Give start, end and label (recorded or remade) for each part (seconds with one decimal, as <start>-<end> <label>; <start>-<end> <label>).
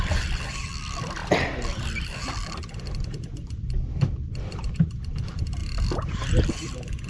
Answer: 0.0-5.6 remade; 5.6-6.5 recorded; 6.5-7.1 remade